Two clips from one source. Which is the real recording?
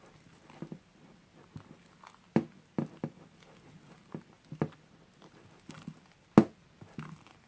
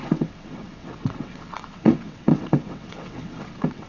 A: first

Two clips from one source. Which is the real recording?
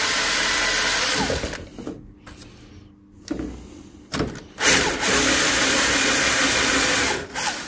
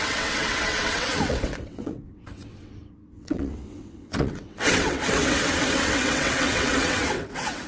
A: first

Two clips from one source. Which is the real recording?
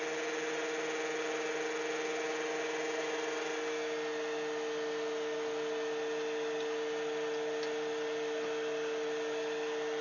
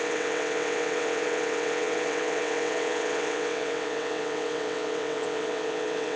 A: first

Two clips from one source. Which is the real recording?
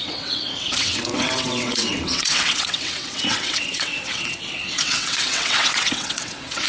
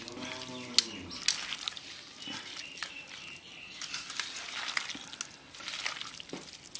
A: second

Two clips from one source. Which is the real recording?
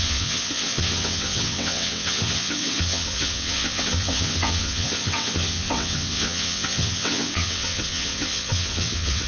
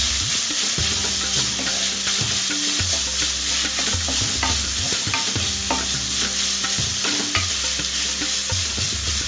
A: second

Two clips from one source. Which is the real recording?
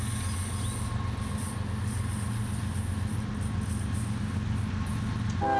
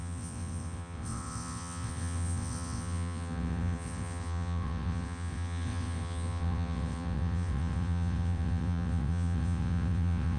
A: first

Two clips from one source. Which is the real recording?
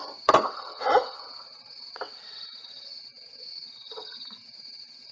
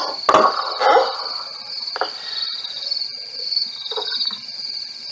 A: second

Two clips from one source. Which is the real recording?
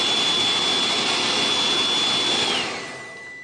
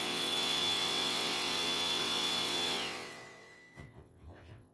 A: first